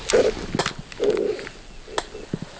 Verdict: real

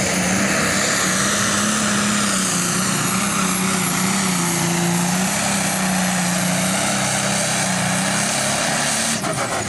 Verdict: real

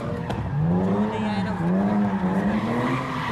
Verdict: real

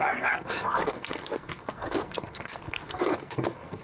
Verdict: fake